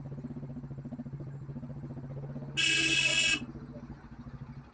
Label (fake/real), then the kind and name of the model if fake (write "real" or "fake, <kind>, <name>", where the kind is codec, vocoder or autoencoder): real